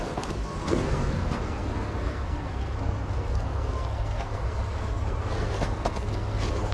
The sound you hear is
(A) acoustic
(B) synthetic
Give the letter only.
B